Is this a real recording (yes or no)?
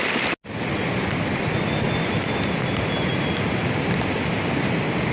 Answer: yes